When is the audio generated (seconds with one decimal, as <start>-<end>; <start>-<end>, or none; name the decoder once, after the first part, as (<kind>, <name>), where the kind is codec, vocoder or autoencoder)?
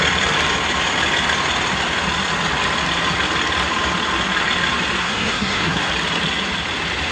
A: 5.0-5.9 (codec, SNAC)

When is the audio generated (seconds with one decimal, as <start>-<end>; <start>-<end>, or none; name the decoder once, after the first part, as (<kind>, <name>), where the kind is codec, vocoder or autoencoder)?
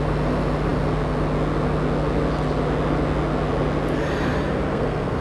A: 4.7-5.2 (codec, SNAC)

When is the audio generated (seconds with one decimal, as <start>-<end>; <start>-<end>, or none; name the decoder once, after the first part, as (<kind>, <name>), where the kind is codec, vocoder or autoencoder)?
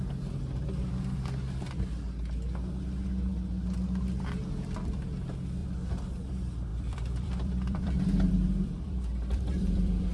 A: 5.6-6.3 (vocoder, BigVGAN v2); 6.7-10.1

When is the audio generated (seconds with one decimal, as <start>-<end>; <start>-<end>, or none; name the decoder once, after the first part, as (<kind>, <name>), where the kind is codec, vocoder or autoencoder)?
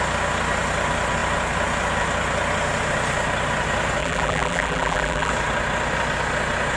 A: 4.0-5.3 (vocoder, BigVGAN v2)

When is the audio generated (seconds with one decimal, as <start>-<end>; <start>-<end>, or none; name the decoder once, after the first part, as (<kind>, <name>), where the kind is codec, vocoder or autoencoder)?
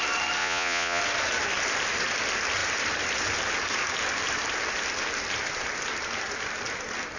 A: 0.4-1.0 (vocoder, Vocos)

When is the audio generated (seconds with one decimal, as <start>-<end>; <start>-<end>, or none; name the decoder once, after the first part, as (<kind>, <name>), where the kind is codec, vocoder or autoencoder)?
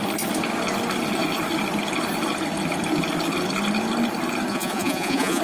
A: 4.5-5.4 (vocoder, Vocos)